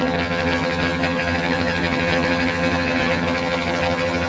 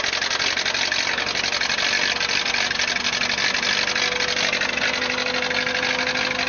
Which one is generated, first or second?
first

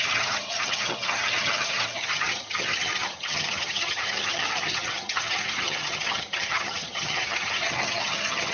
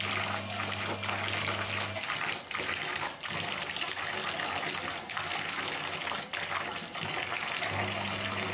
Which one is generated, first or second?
first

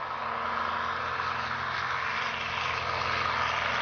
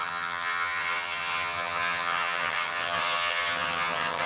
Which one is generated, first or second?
second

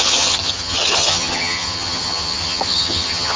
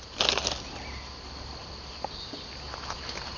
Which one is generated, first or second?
first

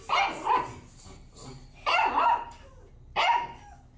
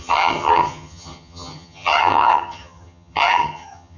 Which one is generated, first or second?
second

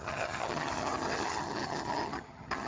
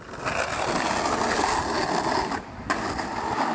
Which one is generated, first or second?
first